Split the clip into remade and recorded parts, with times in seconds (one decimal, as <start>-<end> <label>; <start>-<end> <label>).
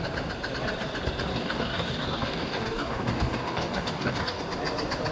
0.0-1.3 recorded; 1.3-4.4 remade; 4.4-5.1 recorded